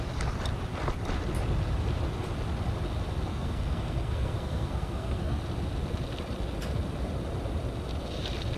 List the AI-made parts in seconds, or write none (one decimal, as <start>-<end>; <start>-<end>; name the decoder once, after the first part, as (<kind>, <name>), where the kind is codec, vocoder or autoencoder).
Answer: 3.3-5.4 (codec, SNAC)